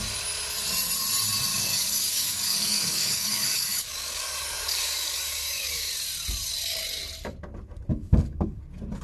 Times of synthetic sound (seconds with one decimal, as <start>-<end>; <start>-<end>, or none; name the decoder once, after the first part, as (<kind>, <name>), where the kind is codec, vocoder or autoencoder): 1.5-5.9 (codec, DAC); 7.9-8.6